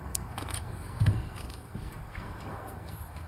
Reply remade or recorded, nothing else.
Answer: remade